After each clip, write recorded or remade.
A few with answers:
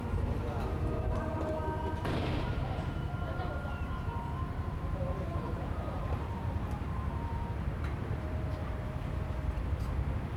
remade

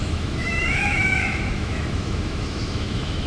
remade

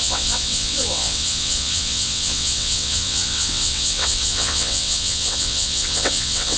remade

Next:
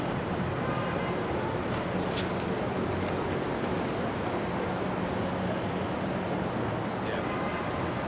recorded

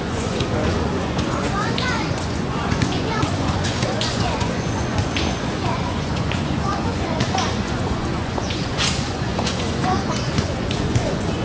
remade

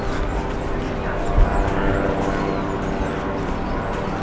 recorded